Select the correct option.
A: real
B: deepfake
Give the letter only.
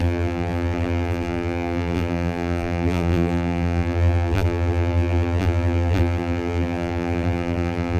B